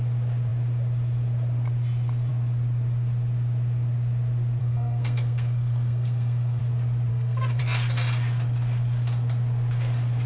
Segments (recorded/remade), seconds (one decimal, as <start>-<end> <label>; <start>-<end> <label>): 0.0-4.6 recorded; 4.6-6.6 remade; 6.6-7.1 recorded; 7.1-7.6 remade; 7.6-10.3 recorded